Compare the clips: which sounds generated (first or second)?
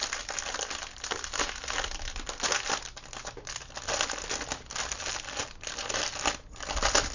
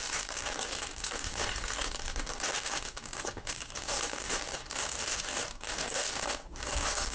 second